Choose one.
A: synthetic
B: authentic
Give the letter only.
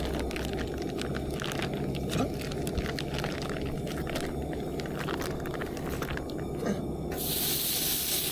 B